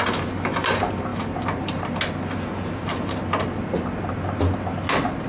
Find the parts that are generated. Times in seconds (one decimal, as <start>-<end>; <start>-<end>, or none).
none